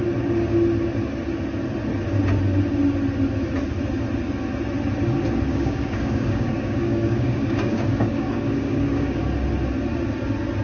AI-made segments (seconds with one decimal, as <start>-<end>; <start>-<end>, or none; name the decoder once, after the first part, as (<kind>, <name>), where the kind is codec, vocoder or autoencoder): 5.5-9.2 (codec, DAC)